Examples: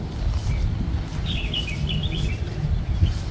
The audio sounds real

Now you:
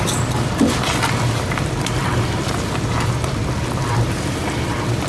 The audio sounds fake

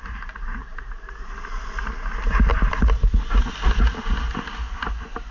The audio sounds real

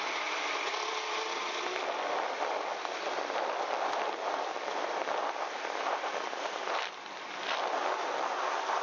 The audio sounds fake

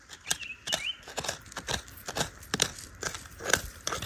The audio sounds fake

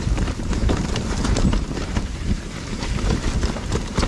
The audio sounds fake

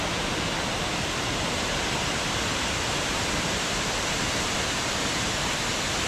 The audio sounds fake